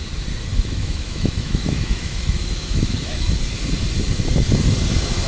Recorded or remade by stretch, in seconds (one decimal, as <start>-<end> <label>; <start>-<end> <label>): 0.0-0.5 recorded; 0.5-3.3 remade; 3.3-5.3 recorded